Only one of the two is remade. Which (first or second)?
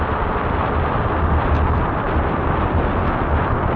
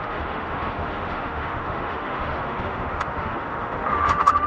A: second